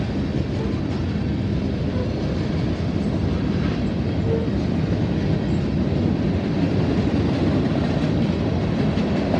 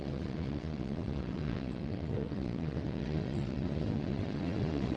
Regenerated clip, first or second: second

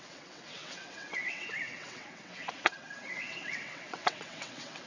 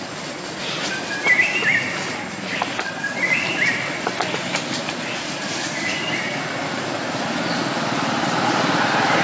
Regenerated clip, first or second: first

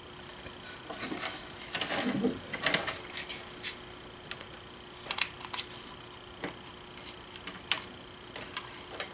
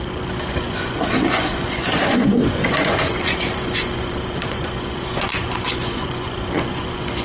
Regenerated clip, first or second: second